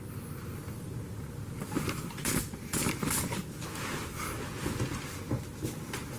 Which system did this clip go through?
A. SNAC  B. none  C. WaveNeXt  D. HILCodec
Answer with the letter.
B